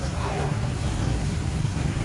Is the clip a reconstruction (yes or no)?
yes